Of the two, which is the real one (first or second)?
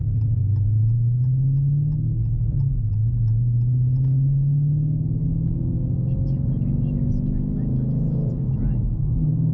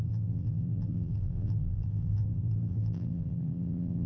first